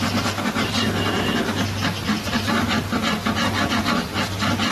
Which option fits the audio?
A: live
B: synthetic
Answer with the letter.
B